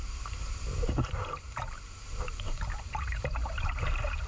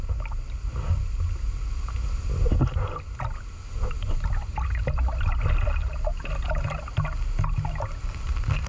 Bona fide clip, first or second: second